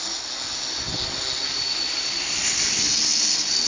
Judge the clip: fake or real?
real